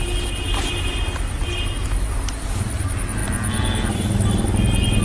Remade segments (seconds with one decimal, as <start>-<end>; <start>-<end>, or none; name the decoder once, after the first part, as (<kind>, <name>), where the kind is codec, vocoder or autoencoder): none